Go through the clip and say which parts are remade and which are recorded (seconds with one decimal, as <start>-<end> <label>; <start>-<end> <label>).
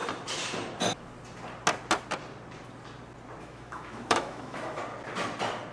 0.0-3.4 recorded; 3.4-4.8 remade; 4.8-5.7 recorded